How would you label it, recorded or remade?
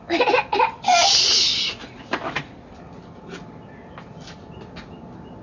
recorded